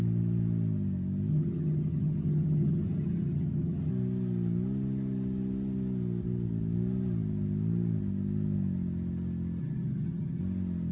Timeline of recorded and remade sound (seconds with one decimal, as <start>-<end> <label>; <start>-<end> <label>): 0.0-1.3 recorded; 1.3-3.9 remade; 3.9-9.6 recorded; 9.6-10.4 remade; 10.4-10.9 recorded